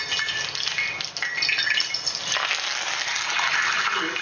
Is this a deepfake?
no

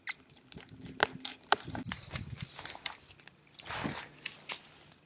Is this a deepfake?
no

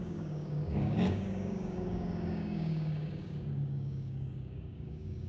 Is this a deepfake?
yes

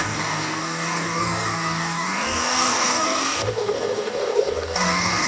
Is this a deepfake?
yes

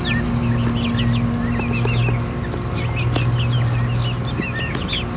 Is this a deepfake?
no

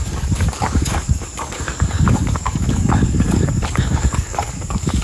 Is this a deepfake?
yes